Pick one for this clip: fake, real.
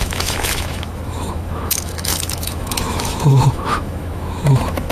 fake